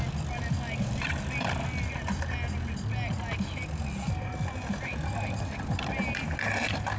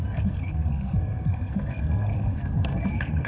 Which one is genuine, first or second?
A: first